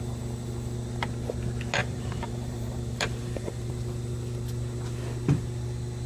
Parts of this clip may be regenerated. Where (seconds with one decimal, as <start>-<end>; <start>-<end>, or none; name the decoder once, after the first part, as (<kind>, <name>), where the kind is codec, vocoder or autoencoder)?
1.8-3.7 (vocoder, BigVGAN v2)

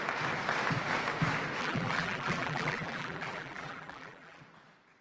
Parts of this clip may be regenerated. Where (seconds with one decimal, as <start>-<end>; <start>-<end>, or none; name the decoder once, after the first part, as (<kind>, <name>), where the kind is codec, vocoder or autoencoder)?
1.6-4.4 (vocoder, BigVGAN v2)

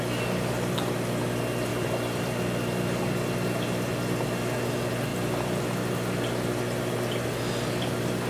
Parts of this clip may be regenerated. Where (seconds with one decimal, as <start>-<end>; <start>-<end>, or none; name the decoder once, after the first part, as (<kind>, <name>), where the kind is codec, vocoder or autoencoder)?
1.7-3.0 (vocoder, BigVGAN v2); 5.1-5.6

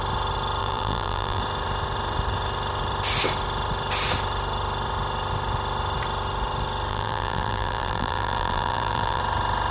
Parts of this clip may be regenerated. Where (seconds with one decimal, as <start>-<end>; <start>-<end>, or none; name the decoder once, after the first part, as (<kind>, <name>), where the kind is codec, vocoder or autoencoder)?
0.6-1.4 (vocoder, BigVGAN v2); 6.9-9.2